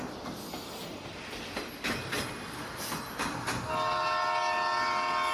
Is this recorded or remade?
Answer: recorded